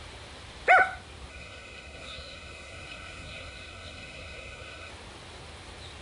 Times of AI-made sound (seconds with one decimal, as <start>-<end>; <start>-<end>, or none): 1.3-4.9